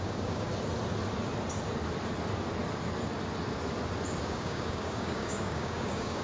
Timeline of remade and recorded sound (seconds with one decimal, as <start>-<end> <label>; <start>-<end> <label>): 0.0-0.5 remade; 0.5-4.2 recorded; 4.2-6.2 remade